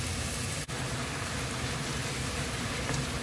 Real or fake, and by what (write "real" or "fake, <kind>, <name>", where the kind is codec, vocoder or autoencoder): real